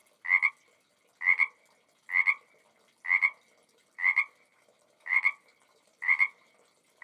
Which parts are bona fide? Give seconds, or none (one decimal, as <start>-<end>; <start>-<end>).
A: 0.0-3.6; 6.5-7.0